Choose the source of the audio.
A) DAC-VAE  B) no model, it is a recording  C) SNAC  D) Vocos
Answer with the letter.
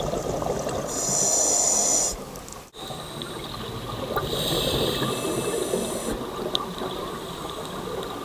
B